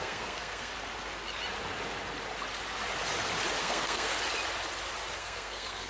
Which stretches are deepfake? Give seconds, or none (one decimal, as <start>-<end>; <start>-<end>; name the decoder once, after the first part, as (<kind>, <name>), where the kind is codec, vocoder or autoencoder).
0.0-0.7 (codec, SNAC); 3.6-4.1; 5.2-5.9